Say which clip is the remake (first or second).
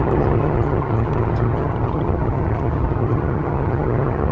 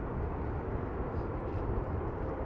first